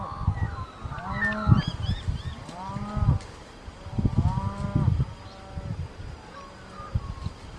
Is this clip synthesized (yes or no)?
no